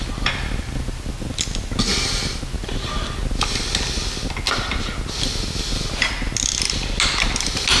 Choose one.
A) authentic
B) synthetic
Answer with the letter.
A